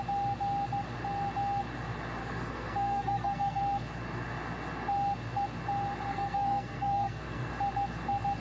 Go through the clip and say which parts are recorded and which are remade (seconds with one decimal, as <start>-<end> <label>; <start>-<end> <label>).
0.0-2.2 recorded; 2.2-3.6 remade; 3.6-6.1 recorded; 6.1-7.5 remade; 7.5-8.4 recorded